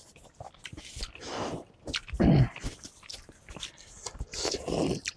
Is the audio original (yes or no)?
no